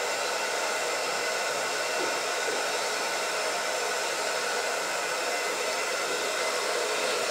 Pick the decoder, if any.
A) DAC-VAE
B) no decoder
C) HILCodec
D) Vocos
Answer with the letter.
B